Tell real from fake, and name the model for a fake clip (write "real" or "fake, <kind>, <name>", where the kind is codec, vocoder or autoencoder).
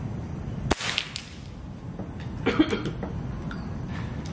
real